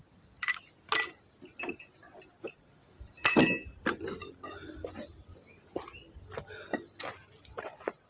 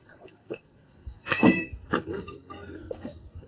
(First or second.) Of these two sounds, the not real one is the second